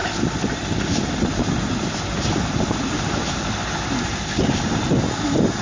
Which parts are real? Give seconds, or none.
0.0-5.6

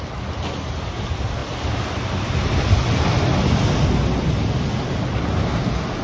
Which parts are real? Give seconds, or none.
0.0-6.0

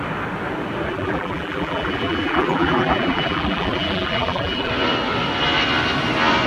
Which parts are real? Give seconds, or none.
0.0-0.9; 4.7-6.5

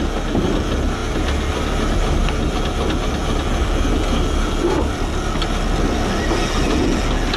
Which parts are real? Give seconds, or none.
0.0-7.4